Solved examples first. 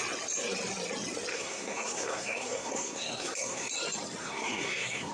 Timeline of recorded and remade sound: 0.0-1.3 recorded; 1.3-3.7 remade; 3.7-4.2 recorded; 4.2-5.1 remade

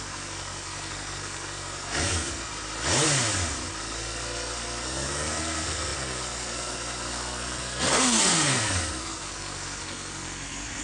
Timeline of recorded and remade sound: 0.0-2.5 remade; 2.5-3.8 recorded; 3.8-10.8 remade

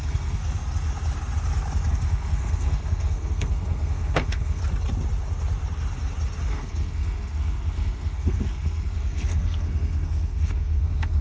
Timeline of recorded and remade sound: 0.0-0.4 remade; 0.4-1.9 recorded; 1.9-4.6 remade; 4.6-6.5 recorded; 6.5-11.2 remade

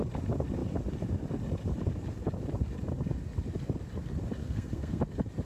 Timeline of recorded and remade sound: 0.0-4.4 recorded; 4.4-5.0 remade; 5.0-5.4 recorded

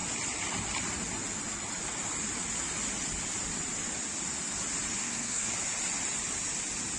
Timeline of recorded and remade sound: 0.0-5.0 recorded; 5.0-5.5 remade; 5.5-7.0 recorded

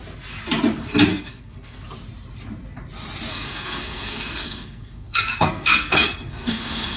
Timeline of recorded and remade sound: 0.0-1.1 recorded; 1.1-1.8 remade; 1.8-3.3 recorded; 3.3-7.0 remade